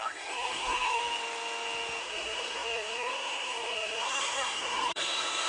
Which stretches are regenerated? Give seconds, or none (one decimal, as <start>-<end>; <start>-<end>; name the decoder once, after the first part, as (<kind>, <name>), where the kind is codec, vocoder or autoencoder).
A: 0.0-1.0 (codec, SNAC); 2.0-5.5